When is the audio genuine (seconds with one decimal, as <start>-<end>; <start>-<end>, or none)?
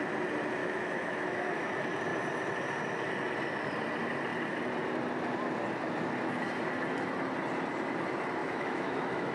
0.0-0.6; 1.7-8.4